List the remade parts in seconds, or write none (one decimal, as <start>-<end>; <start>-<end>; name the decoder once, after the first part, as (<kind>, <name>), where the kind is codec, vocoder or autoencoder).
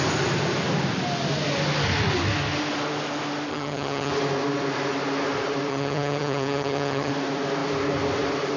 3.5-4.1 (vocoder, HiFi-GAN); 5.7-7.1